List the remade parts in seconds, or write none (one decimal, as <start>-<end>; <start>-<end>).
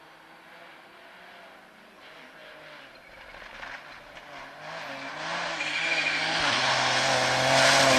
none